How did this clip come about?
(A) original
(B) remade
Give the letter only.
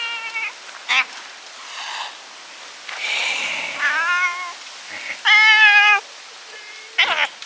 A